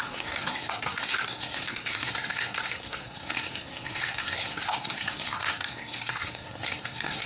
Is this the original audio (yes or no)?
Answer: no